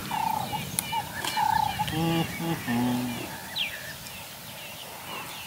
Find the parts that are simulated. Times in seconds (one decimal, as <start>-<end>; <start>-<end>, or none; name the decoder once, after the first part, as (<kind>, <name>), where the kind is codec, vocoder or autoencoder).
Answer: none